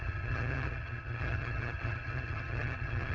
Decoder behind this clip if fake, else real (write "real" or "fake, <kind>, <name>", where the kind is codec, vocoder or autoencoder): fake, vocoder, HiFi-GAN